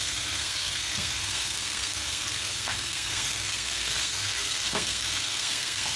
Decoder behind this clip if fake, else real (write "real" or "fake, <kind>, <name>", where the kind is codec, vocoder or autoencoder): fake, codec, SNAC